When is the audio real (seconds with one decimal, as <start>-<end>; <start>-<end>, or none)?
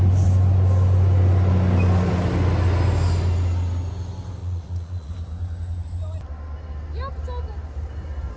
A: 0.0-4.4; 5.1-8.4